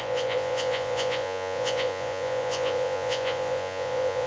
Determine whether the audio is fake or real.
fake